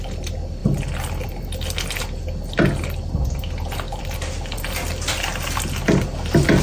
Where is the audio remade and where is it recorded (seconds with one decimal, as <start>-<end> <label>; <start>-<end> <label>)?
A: 0.0-6.6 recorded